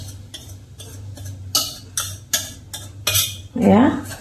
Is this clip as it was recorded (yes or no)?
yes